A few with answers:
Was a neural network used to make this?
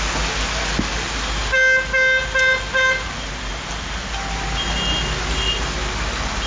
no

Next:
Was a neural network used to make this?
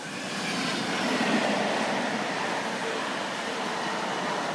no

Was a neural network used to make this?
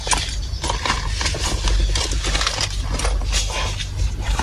no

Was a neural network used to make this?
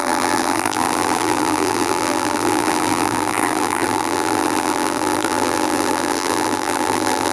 yes